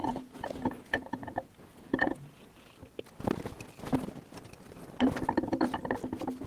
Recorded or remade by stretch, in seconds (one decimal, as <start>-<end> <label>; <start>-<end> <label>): 0.0-2.7 remade; 2.7-6.5 recorded

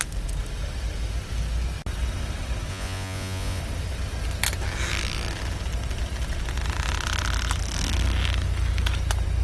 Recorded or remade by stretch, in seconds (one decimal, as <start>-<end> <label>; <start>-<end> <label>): 0.0-2.7 recorded; 2.7-3.6 remade; 3.6-9.4 recorded

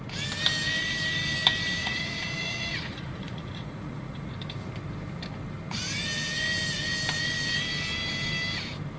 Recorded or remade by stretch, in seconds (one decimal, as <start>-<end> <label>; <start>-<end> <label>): 0.0-1.8 recorded; 1.8-4.3 remade; 4.3-9.0 recorded

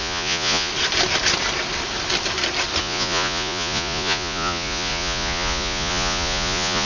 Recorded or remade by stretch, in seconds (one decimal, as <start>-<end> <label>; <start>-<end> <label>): 0.0-0.7 remade; 0.7-2.8 recorded; 2.8-6.9 remade

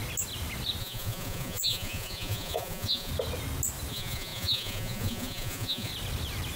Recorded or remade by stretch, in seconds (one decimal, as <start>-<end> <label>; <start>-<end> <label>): 0.0-0.8 recorded; 0.8-3.1 remade; 3.1-3.9 recorded; 3.9-5.9 remade; 5.9-6.6 recorded

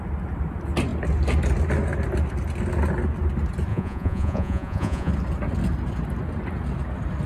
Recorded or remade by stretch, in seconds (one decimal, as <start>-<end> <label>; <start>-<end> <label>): 0.0-3.7 recorded; 3.7-5.1 remade; 5.1-7.3 recorded

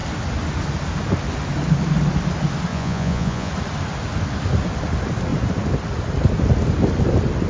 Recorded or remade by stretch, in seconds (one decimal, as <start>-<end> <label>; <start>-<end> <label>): 0.0-2.7 recorded; 2.7-3.5 remade; 3.5-7.5 recorded

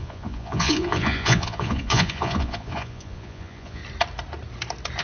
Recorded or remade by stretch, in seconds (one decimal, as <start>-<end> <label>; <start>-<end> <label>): 0.0-3.8 remade; 3.8-5.0 recorded